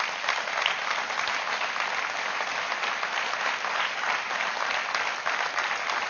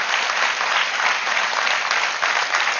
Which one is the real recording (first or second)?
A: first